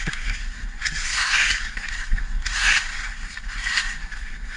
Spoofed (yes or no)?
yes